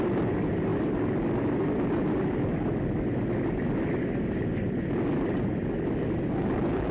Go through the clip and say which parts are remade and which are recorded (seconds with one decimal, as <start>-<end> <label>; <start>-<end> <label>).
0.0-6.9 recorded